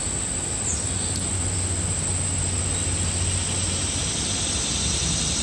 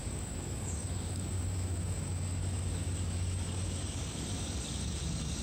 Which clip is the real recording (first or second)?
first